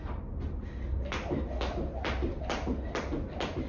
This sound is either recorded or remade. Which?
recorded